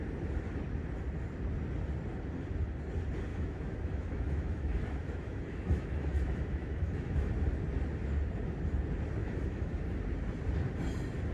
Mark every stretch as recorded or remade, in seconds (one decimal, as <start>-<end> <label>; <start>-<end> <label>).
0.0-3.3 recorded; 3.3-7.3 remade; 7.3-9.2 recorded; 9.2-9.8 remade; 9.8-11.3 recorded